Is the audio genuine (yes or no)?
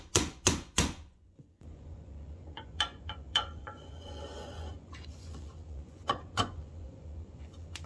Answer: no